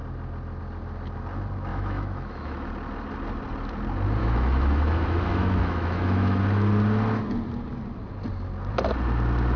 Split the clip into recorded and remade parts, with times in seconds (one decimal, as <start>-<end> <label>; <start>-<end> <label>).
0.0-1.7 recorded; 1.7-2.7 remade; 2.7-4.2 recorded; 4.2-6.4 remade; 6.4-9.6 recorded